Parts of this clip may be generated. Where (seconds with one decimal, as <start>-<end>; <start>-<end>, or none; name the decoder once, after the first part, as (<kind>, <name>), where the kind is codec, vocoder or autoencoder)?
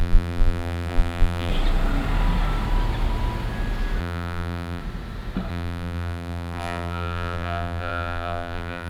0.0-1.5 (vocoder, BigVGAN v2); 4.0-4.8; 5.5-8.9